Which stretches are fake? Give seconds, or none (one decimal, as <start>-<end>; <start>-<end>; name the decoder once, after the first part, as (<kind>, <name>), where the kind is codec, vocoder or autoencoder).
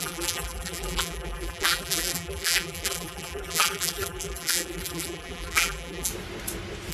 0.0-6.1 (vocoder, BigVGAN v2)